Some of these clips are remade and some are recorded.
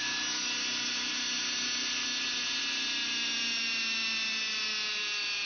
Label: recorded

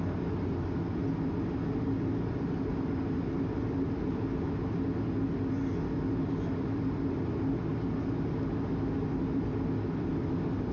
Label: recorded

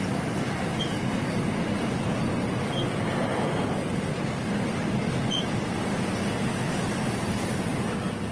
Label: recorded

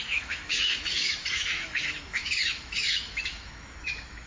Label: remade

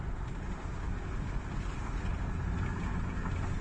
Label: recorded